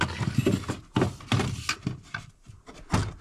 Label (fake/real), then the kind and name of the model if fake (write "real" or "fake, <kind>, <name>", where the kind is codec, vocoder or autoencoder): real